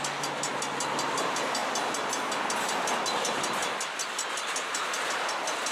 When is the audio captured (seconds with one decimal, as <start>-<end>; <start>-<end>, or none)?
0.0-5.7